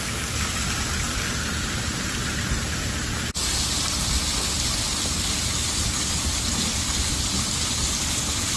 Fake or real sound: real